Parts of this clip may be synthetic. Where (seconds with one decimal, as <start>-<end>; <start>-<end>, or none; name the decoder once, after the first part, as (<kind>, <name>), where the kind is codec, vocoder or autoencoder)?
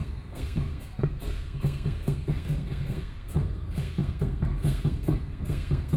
0.0-6.0 (codec, SNAC)